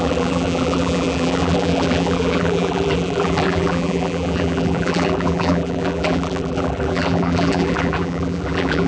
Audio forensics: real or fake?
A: fake